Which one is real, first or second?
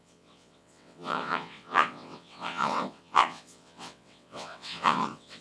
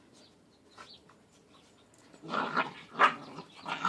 second